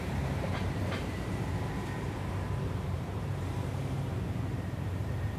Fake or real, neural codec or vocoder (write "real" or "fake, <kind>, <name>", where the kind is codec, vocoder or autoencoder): fake, vocoder, BigVGAN v2